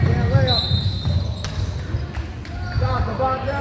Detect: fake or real real